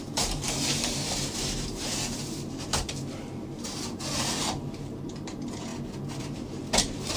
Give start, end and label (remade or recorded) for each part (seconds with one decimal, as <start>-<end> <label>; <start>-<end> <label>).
0.0-5.7 remade; 5.7-6.2 recorded; 6.2-7.2 remade